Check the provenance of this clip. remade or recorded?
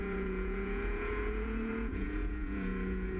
remade